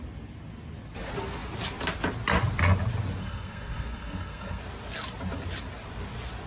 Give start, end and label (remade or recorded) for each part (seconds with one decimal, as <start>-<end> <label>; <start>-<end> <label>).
0.0-3.2 recorded; 3.2-4.6 remade; 4.6-6.5 recorded